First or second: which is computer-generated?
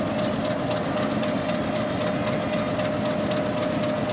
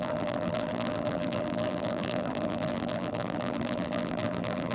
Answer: second